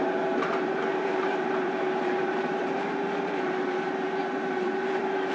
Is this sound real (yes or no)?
no